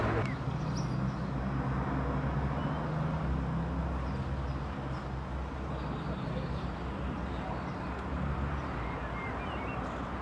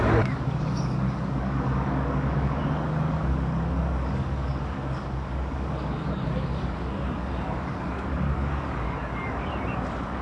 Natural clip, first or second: first